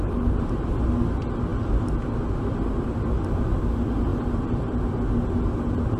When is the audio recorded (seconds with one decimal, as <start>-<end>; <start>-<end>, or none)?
0.0-6.0